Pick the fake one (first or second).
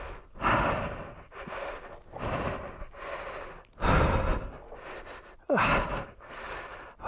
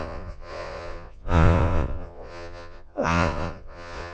second